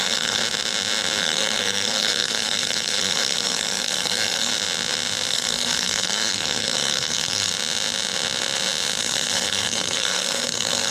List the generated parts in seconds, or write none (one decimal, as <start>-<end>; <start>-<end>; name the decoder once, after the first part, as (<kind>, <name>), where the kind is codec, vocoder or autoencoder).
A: 0.0-0.4 (codec, SNAC); 1.2-4.5; 5.3-7.5; 9.0-10.9